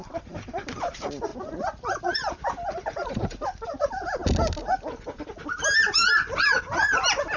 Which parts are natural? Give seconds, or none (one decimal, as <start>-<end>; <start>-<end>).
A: 1.3-2.0; 4.2-5.5; 6.0-6.6